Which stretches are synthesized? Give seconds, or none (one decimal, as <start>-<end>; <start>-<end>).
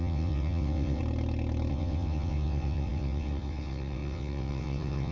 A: 0.0-1.0; 1.7-5.1